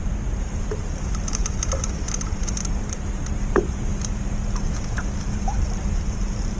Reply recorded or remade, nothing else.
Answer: remade